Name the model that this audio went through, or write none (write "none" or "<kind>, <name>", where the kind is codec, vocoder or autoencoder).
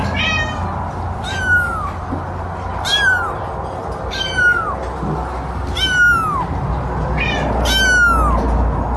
none